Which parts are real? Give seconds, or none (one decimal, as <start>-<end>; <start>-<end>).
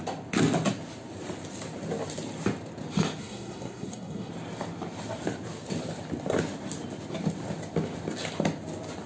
0.0-3.2; 4.3-9.1